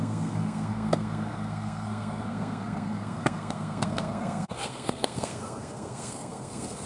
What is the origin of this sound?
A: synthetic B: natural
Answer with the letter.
A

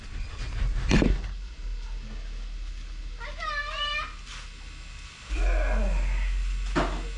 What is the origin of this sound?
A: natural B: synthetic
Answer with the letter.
A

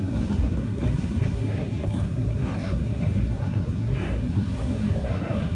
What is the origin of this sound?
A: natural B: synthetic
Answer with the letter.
B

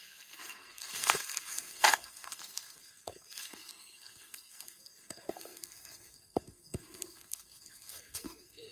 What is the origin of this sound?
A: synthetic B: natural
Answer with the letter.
A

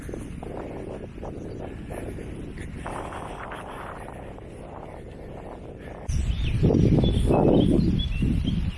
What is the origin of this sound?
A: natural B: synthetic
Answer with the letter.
A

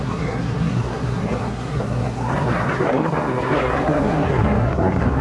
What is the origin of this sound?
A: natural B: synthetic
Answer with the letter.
B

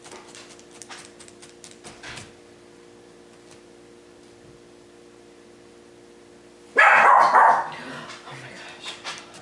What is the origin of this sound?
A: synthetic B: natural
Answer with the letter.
B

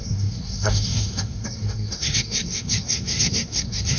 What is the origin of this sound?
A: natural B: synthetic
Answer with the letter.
B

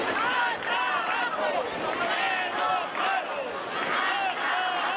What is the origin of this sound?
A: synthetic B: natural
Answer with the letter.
B